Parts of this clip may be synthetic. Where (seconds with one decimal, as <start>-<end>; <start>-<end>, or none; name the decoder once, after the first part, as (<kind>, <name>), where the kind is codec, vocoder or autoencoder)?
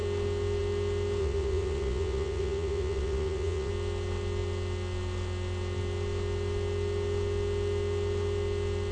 1.2-3.7 (vocoder, Vocos)